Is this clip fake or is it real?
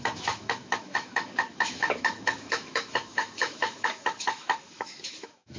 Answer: fake